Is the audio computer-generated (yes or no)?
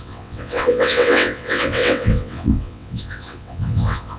yes